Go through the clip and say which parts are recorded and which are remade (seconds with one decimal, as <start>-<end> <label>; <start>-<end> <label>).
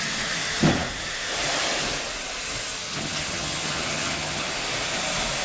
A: 0.0-2.8 recorded; 2.8-4.5 remade; 4.5-5.4 recorded